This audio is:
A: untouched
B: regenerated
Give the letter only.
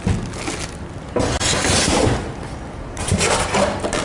A